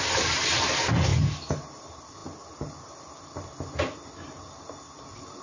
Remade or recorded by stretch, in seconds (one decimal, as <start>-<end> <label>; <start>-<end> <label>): 0.0-5.4 recorded